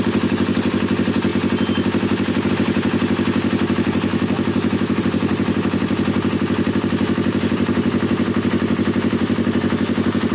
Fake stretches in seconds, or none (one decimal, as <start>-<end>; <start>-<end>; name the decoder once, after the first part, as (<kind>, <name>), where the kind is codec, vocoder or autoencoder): 4.1-5.0 (autoencoder, DAC-VAE)